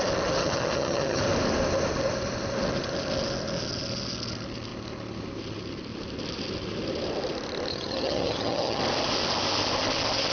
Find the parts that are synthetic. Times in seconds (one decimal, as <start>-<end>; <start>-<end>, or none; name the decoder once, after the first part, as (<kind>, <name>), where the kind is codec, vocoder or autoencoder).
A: 0.4-1.2 (vocoder, HiFi-GAN); 7.7-8.8